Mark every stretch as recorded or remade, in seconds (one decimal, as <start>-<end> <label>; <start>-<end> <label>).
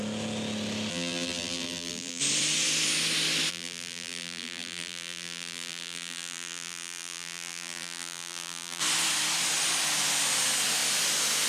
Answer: 0.0-0.9 recorded; 0.9-2.2 remade; 2.2-3.5 recorded; 3.5-8.8 remade; 8.8-11.5 recorded